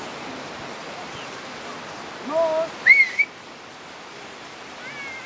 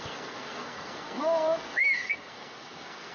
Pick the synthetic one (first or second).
second